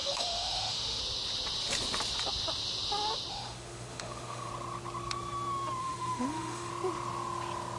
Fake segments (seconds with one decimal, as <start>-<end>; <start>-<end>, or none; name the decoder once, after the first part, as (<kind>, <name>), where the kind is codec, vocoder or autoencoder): 0.0-1.0 (autoencoder, DAC-VAE); 3.3-4.5; 5.8-6.7